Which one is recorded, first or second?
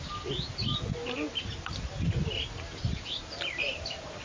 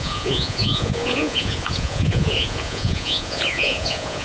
first